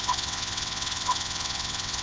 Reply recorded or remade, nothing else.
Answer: remade